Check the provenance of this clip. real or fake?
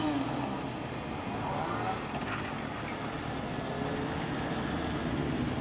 real